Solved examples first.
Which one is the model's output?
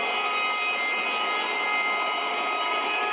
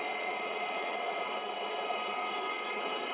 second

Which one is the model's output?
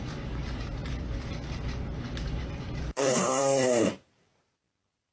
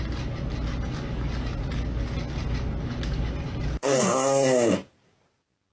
first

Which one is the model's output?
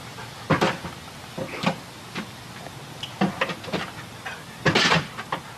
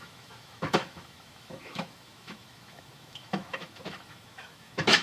second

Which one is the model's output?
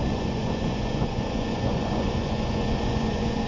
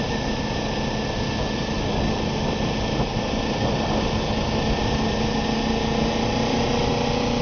first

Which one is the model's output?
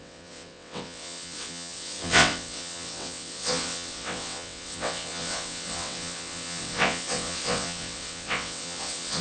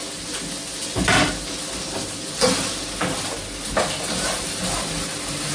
first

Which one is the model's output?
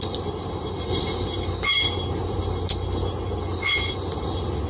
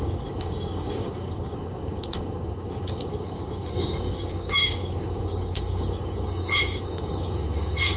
second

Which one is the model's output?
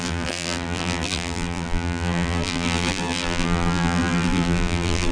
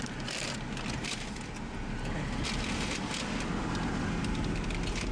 first